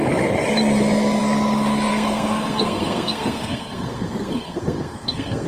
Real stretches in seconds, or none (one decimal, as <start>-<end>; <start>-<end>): 0.0-1.9